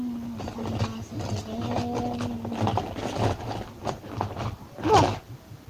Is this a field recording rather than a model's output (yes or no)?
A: yes